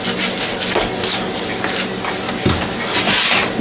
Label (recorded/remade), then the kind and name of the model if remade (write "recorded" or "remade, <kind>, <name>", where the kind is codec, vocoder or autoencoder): recorded